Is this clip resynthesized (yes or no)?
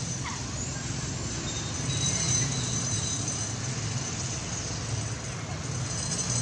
no